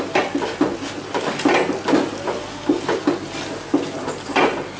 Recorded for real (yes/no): yes